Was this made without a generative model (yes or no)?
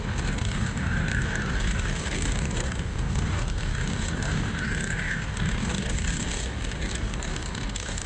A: no